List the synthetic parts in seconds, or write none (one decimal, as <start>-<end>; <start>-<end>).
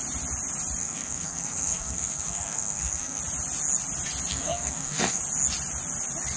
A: 0.8-3.2; 4.3-5.2